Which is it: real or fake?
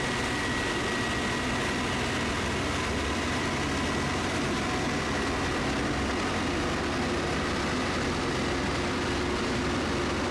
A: real